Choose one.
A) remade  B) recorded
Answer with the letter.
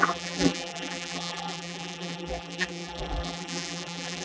A